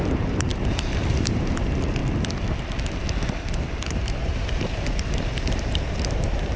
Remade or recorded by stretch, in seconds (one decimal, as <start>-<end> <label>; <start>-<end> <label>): 0.0-0.5 remade; 0.5-1.1 recorded; 1.1-2.0 remade; 2.0-3.6 recorded; 3.6-6.6 remade